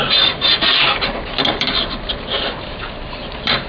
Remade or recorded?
remade